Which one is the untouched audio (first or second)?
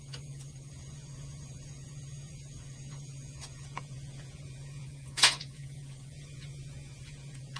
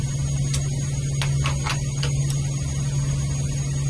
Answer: second